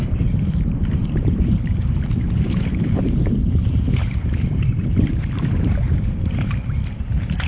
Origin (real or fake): fake